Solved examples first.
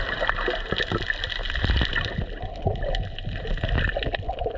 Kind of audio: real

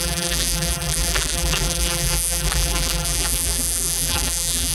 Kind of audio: fake